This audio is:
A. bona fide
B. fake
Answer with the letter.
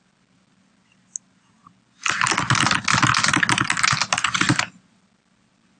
A